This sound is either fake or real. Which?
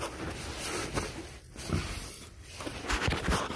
real